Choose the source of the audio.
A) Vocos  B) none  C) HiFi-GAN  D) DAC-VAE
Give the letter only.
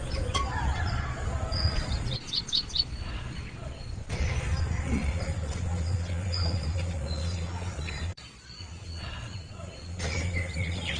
A